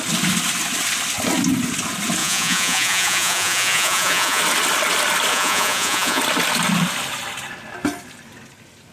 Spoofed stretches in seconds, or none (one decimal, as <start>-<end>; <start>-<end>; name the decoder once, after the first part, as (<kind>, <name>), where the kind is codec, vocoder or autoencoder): 2.2-4.4 (vocoder, Vocos); 5.3-6.2

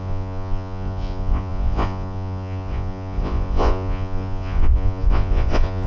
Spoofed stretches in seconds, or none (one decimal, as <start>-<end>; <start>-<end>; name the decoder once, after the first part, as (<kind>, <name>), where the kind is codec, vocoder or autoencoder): 0.0-5.9 (vocoder, Vocos)

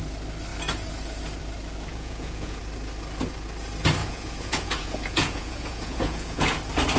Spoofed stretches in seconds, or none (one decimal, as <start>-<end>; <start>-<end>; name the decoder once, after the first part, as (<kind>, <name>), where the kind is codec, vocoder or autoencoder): 1.9-2.6 (vocoder, Vocos); 4.0-6.6

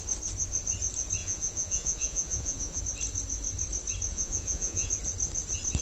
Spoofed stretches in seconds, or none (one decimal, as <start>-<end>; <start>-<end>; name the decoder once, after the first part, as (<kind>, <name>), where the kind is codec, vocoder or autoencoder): 1.2-2.8 (vocoder, Vocos); 4.1-4.9